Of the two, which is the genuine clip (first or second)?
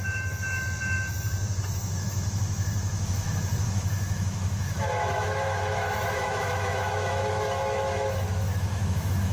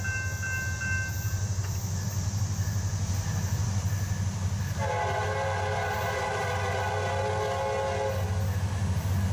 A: second